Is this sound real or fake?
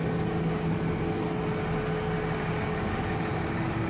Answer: real